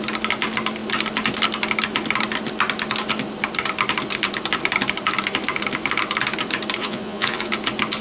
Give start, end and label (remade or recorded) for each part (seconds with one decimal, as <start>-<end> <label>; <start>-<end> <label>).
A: 0.0-6.8 recorded; 6.8-7.5 remade; 7.5-8.0 recorded